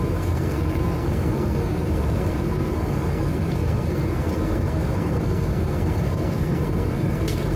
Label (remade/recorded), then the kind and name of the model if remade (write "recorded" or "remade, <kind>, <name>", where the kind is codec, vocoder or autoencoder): remade, codec, SNAC